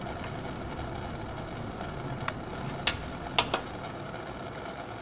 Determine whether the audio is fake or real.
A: real